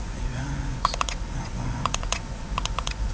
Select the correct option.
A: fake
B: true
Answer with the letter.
A